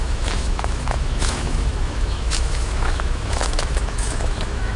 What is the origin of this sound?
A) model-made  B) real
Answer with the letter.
A